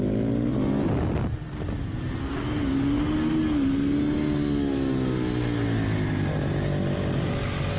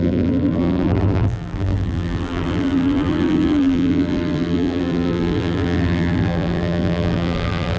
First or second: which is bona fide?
first